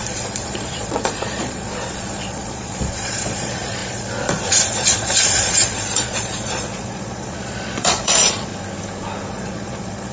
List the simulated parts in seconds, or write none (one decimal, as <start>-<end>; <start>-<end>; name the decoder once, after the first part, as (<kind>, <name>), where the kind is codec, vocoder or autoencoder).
0.0-8.5 (vocoder, Vocos); 9.3-10.1